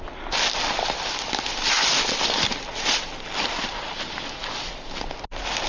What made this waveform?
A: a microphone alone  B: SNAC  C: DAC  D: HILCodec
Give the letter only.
A